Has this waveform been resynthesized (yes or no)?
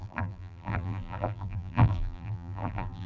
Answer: yes